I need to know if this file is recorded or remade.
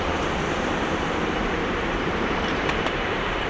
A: remade